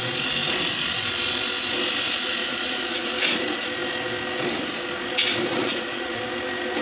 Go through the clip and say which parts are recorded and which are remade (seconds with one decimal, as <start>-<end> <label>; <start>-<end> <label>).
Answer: 0.0-2.4 recorded; 2.4-3.1 remade; 3.1-5.5 recorded; 5.5-6.2 remade; 6.2-6.8 recorded